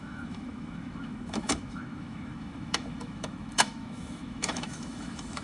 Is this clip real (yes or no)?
no